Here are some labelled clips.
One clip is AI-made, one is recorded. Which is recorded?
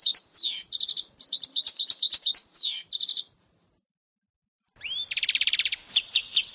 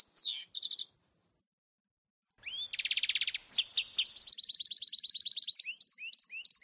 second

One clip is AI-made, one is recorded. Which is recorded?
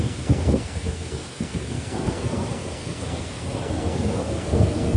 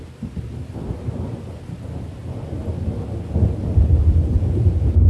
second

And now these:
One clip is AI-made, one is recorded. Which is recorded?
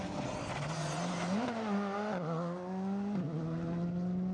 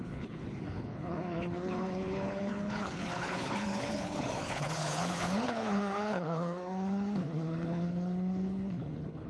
first